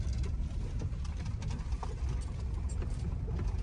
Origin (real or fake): real